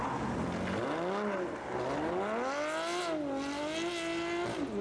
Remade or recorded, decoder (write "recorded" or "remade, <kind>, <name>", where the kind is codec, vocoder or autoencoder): recorded